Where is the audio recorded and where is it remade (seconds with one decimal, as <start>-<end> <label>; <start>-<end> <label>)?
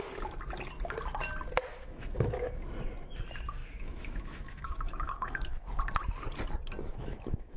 0.0-1.7 recorded; 1.7-2.5 remade; 2.5-3.6 recorded; 3.6-5.7 remade; 5.7-6.9 recorded; 6.9-7.6 remade